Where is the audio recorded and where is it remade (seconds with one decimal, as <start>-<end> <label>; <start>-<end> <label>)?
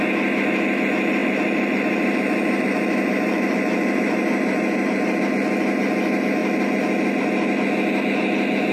0.0-1.2 recorded; 1.2-5.2 remade; 5.2-8.7 recorded